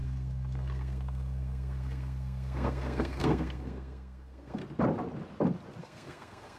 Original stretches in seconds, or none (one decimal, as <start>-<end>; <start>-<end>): 4.6-5.8